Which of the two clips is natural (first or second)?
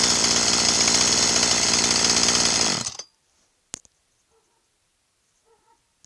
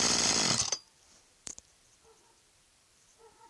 first